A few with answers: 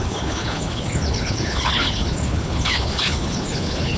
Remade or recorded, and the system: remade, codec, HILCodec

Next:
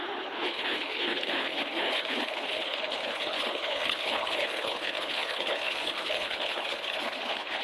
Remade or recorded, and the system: remade, codec, HILCodec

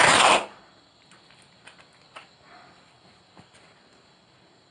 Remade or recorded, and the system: recorded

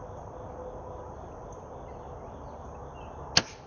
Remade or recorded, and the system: recorded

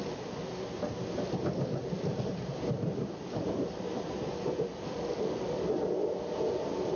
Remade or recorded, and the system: recorded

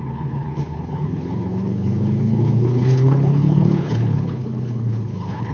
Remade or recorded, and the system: remade, codec, HILCodec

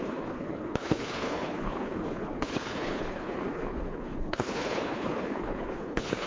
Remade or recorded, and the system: remade, codec, HILCodec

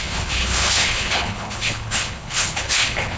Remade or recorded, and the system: remade, codec, HILCodec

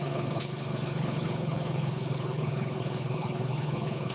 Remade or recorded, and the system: remade, codec, HILCodec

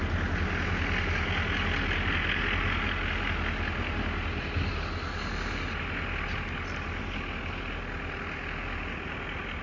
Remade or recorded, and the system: recorded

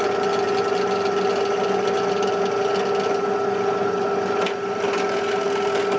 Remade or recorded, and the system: recorded